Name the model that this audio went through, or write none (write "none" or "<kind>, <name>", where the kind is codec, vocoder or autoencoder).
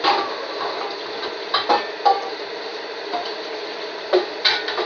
vocoder, BigVGAN v2